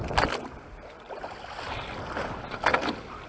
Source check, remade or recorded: recorded